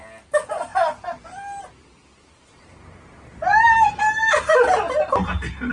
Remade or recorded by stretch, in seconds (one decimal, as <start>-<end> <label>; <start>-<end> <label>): 0.0-5.7 recorded